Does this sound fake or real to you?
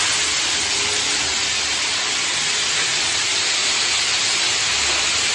real